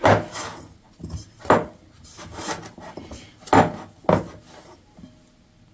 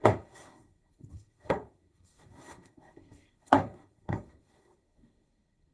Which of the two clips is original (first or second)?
first